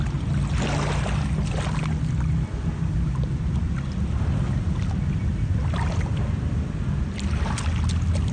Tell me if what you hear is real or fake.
real